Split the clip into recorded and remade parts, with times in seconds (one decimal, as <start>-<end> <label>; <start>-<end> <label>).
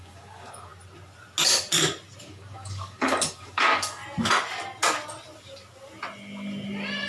0.0-0.7 remade; 0.7-2.2 recorded; 2.2-4.0 remade; 4.0-7.1 recorded